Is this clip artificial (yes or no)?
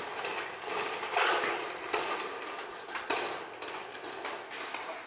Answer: no